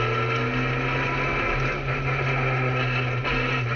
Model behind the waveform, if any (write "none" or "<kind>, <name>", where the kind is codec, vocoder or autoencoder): none